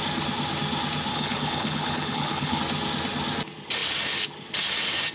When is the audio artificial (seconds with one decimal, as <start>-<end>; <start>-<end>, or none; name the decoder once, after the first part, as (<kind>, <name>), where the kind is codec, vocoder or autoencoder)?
1.1-2.6 (codec, HILCodec)

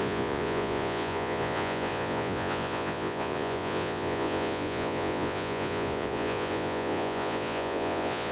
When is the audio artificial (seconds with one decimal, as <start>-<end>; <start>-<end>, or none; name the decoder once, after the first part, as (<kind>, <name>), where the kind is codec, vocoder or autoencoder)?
0.0-8.3 (vocoder, Vocos)

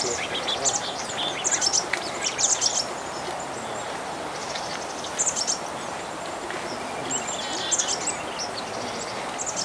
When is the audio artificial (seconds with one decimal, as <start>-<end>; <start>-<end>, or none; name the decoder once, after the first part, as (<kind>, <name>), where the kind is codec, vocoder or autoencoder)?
none

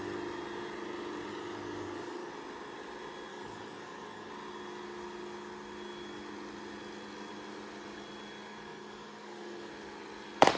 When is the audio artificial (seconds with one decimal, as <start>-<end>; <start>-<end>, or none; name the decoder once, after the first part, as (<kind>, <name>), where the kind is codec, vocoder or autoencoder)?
1.3-2.3 (codec, DAC); 3.3-4.3; 8.7-9.7

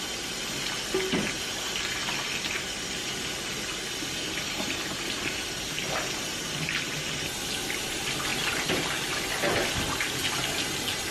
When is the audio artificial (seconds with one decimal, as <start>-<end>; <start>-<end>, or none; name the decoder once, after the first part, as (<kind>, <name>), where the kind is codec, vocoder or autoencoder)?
none

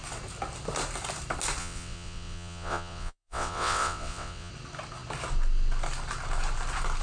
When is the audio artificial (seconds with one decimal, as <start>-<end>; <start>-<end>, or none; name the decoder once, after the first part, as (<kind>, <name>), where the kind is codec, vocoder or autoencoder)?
1.6-4.5 (vocoder, WaveNeXt)